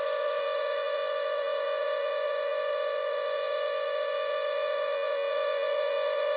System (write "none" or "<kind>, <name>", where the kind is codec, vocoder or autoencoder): vocoder, Vocos